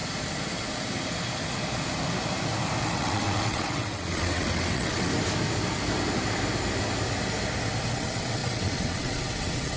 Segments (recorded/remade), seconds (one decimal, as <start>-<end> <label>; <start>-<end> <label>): 0.0-2.8 recorded; 2.8-5.1 remade; 5.1-7.9 recorded; 7.9-9.8 remade

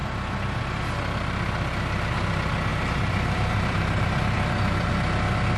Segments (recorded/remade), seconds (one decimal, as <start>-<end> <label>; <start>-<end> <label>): 0.0-0.8 remade; 0.8-2.7 recorded; 2.7-4.9 remade; 4.9-5.6 recorded

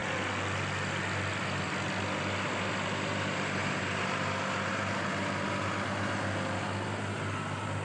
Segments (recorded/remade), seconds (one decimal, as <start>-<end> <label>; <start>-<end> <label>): 0.0-7.8 recorded

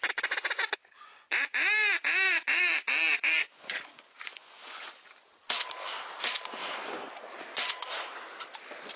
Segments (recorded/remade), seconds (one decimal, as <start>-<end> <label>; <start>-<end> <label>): 0.0-0.8 recorded; 0.8-5.0 remade; 5.0-6.6 recorded; 6.6-7.9 remade; 7.9-9.0 recorded

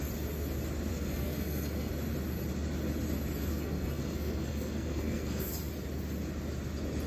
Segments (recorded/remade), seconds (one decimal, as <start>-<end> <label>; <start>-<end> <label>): 0.0-0.9 recorded; 0.9-1.9 remade; 1.9-3.5 recorded; 3.5-5.5 remade; 5.5-7.1 recorded

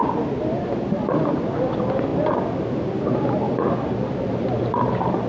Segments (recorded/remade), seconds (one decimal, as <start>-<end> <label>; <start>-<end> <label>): 0.0-5.3 recorded

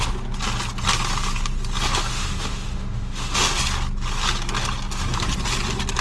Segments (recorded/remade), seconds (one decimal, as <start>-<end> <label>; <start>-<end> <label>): 0.0-2.1 recorded; 2.1-3.6 remade; 3.6-6.0 recorded